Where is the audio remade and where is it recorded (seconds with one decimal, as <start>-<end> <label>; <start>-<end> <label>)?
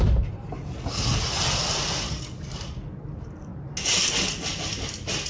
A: 0.0-5.3 recorded